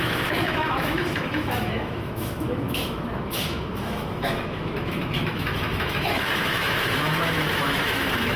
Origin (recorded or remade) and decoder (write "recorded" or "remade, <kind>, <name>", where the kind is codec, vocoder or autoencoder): remade, autoencoder, DAC-VAE